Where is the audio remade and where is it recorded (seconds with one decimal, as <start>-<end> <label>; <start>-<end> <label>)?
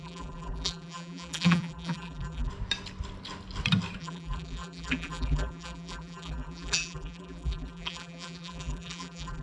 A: 0.0-2.5 remade; 2.5-4.0 recorded; 4.0-9.4 remade